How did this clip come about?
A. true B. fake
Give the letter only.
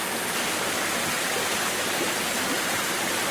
A